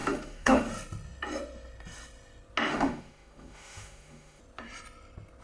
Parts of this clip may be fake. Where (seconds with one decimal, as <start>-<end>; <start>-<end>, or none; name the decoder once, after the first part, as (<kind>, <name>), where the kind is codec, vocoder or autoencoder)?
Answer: 0.0-0.6 (autoencoder, DAC-VAE); 2.7-4.4